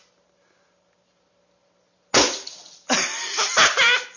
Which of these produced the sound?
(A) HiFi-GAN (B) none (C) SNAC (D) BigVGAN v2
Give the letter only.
B